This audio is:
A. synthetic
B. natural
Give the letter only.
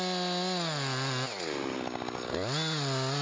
B